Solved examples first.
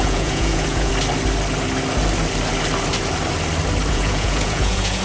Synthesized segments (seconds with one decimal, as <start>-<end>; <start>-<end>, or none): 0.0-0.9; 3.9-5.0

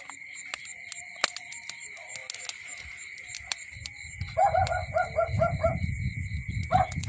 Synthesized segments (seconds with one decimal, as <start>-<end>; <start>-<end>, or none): none

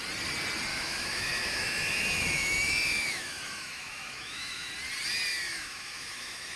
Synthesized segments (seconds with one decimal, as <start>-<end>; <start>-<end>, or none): 0.7-4.7; 5.3-6.6

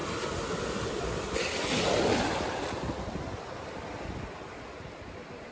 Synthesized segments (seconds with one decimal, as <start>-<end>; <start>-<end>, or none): none

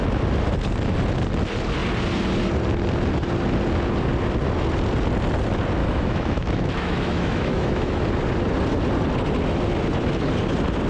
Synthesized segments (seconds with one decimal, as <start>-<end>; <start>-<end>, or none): 5.8-8.0

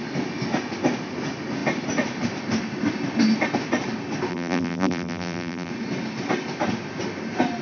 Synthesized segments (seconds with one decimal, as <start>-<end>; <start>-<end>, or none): 4.3-5.7

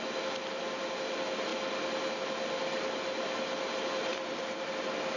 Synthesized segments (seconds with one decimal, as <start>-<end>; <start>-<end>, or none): 4.1-4.7

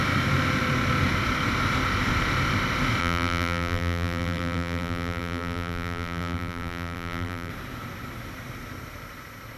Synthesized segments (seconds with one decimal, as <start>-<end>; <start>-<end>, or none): 3.0-7.5